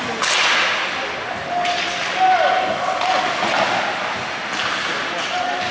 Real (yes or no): yes